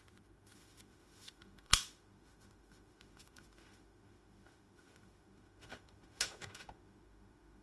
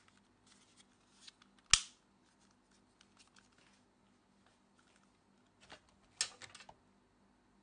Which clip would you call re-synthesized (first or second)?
first